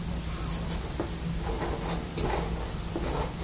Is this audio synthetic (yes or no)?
no